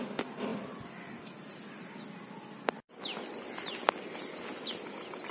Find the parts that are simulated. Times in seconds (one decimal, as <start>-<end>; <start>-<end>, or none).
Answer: none